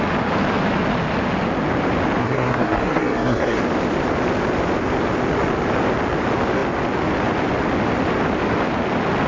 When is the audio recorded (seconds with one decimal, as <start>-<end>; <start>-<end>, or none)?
0.0-2.2; 3.6-9.3